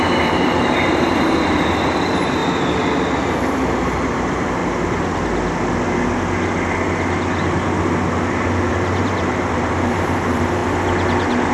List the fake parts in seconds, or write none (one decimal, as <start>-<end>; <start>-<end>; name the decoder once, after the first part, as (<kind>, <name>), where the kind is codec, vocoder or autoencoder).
0.0-2.4 (vocoder, BigVGAN v2); 3.2-4.6; 8.7-10.6